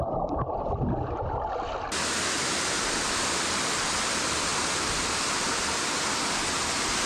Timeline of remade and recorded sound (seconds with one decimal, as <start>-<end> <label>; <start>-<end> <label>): 0.0-7.1 recorded